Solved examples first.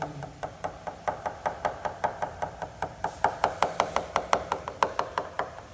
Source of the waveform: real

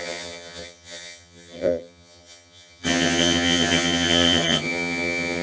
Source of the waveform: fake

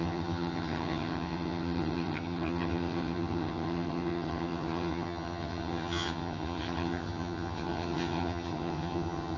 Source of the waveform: fake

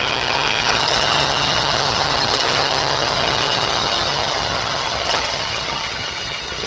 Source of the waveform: fake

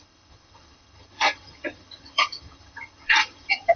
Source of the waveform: fake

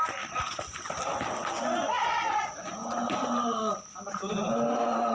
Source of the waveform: real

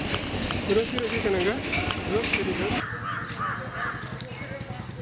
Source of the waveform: real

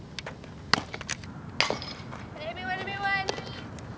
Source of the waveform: real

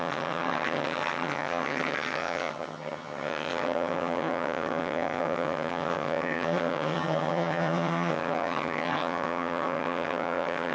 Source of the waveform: fake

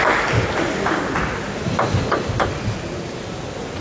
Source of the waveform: real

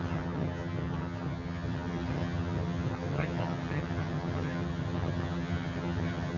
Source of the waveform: fake